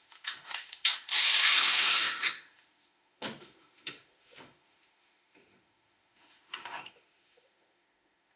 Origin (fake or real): fake